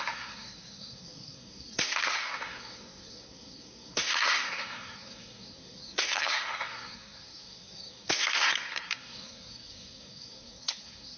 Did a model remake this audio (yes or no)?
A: yes